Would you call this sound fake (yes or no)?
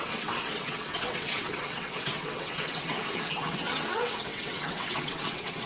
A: yes